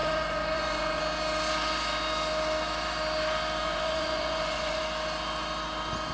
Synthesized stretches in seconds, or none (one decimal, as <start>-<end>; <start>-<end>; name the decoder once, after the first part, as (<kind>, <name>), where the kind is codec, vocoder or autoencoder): 0.0-1.0 (vocoder, Vocos); 3.6-4.8